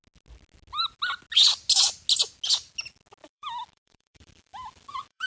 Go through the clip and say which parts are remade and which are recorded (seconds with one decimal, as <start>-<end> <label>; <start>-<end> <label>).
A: 0.0-3.2 recorded; 3.2-5.3 remade